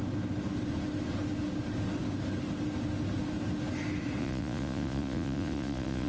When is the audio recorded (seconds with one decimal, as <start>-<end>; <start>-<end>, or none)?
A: 0.0-4.2